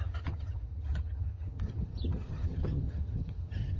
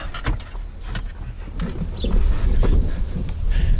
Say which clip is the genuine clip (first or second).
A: second